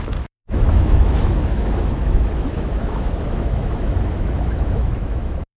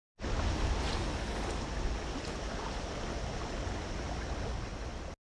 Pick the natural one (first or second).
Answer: second